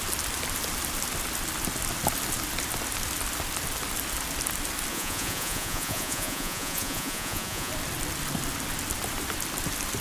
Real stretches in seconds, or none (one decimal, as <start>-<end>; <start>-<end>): 0.0-4.9; 7.7-10.0